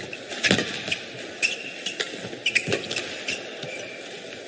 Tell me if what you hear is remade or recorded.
recorded